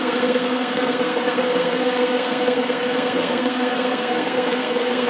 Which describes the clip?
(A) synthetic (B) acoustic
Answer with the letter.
A